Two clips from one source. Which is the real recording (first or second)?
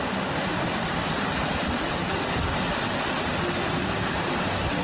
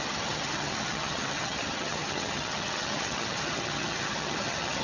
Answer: first